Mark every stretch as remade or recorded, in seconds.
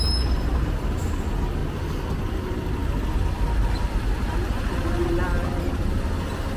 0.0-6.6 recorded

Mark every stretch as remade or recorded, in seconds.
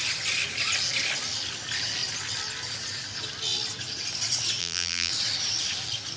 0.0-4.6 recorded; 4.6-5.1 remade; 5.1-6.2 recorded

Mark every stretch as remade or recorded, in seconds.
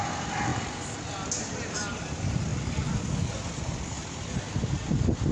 0.0-2.5 recorded; 2.5-3.0 remade; 3.0-5.3 recorded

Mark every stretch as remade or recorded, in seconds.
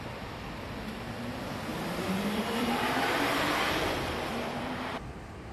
0.0-1.7 recorded; 1.7-5.0 remade; 5.0-5.5 recorded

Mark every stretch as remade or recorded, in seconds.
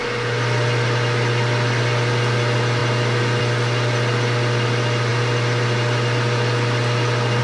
0.0-7.4 recorded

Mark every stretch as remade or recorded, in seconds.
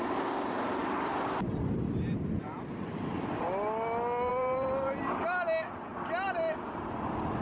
0.0-0.8 recorded; 0.8-1.5 remade; 1.5-4.3 recorded; 4.3-5.0 remade; 5.0-7.4 recorded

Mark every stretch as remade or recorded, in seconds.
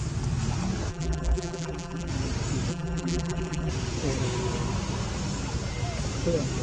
0.0-0.9 recorded; 0.9-2.1 remade; 2.1-2.7 recorded; 2.7-3.7 remade; 3.7-6.6 recorded